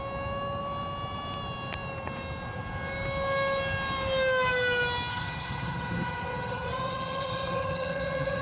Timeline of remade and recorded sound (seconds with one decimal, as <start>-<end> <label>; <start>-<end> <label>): 0.0-5.1 recorded; 5.1-8.4 remade